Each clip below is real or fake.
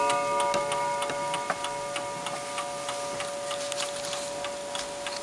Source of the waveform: real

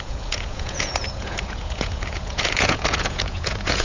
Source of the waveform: fake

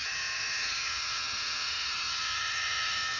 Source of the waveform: fake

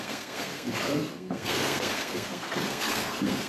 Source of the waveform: fake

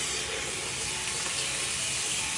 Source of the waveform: real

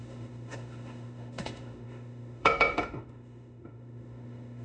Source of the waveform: fake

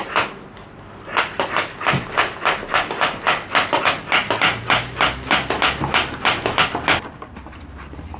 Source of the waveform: real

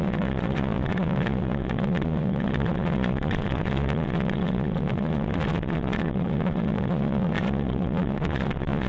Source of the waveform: fake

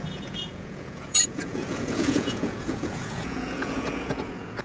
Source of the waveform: fake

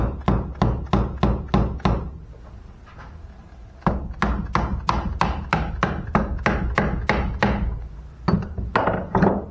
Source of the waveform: real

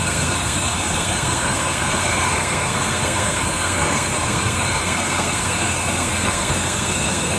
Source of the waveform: fake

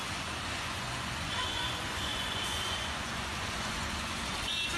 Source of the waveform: fake